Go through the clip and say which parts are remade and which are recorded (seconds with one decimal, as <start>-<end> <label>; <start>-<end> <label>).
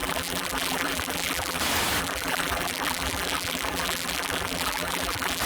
0.0-1.6 remade; 1.6-2.0 recorded; 2.0-5.4 remade